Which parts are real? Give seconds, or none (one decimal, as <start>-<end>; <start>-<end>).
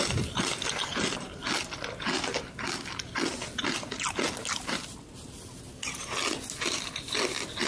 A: 0.0-7.7